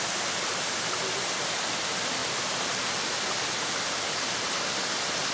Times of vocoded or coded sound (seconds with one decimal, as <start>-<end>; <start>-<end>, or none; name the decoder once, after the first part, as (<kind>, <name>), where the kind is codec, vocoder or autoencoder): none

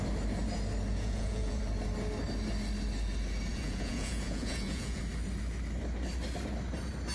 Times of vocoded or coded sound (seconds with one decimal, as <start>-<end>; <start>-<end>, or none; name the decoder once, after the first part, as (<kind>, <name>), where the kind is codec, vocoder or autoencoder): 0.9-1.6 (vocoder, Vocos); 3.5-5.0

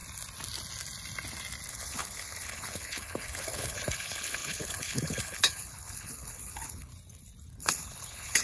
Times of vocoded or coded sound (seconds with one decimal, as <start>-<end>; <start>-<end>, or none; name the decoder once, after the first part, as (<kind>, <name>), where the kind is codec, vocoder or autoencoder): 1.7-6.9 (codec, HILCodec); 7.5-8.4

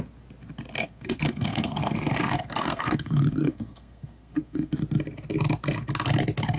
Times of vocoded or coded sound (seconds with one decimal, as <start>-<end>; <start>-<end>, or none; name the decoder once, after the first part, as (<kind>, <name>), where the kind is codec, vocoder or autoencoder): 0.8-4.8 (codec, SNAC)

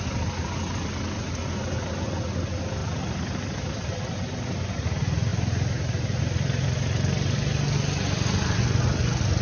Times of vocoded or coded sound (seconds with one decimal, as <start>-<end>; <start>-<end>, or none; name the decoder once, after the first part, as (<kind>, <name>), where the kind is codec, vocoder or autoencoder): none

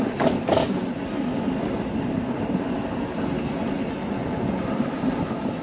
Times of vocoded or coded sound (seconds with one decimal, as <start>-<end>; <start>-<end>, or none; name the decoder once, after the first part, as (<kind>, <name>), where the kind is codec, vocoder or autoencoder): none

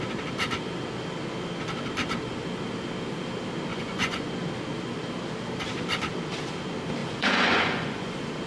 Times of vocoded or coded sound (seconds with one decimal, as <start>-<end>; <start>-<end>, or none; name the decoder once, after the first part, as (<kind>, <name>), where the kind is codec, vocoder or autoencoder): 3.7-4.3 (vocoder, Vocos); 7.0-8.1